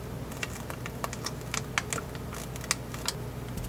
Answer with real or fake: real